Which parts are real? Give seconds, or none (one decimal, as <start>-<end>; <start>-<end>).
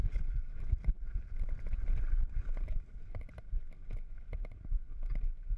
3.4-3.8